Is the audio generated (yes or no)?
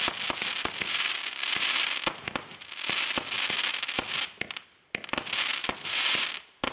no